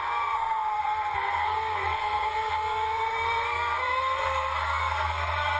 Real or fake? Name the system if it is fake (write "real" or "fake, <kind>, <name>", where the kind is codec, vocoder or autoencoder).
fake, codec, SNAC